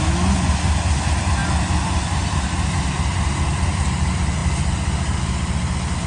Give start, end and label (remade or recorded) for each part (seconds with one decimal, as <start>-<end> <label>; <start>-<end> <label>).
0.0-6.1 recorded